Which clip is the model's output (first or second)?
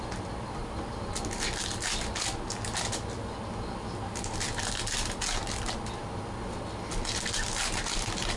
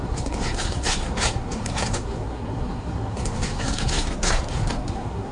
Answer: second